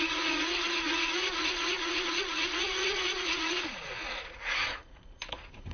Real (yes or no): no